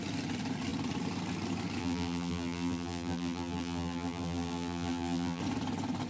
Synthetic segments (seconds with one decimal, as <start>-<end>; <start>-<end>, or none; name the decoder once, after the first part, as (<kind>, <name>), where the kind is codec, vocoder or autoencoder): 1.8-5.4 (vocoder, BigVGAN v2)

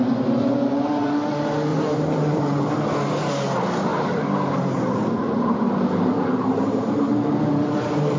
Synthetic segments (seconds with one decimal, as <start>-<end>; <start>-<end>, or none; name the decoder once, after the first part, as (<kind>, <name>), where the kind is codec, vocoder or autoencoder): 1.7-2.6 (vocoder, BigVGAN v2); 3.9-8.2

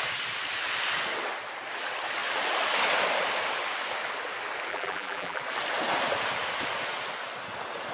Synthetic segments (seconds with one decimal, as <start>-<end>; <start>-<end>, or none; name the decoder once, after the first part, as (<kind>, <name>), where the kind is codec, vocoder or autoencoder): 4.7-5.4 (vocoder, BigVGAN v2)

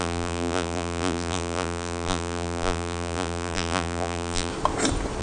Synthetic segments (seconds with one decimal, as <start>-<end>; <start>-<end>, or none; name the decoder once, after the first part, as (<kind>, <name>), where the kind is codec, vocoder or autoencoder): 0.0-4.5 (vocoder, BigVGAN v2)